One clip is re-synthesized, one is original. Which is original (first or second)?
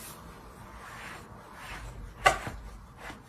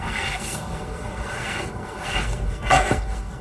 first